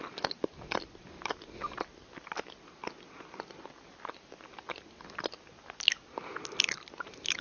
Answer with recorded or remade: recorded